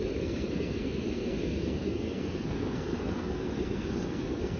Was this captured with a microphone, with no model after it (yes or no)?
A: no